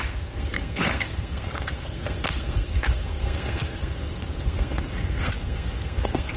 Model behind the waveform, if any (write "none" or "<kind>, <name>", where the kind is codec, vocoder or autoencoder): codec, SNAC